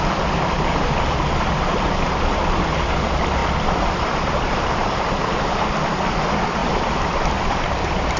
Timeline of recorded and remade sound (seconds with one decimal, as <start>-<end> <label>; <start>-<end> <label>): 0.0-3.4 recorded; 3.4-4.6 remade; 4.6-6.6 recorded; 6.6-8.2 remade